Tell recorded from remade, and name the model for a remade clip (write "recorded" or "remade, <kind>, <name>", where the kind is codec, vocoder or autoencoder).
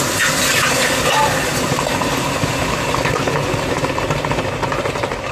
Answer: recorded